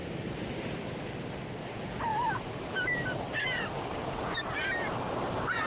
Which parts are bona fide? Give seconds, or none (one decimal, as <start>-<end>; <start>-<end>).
1.1-5.7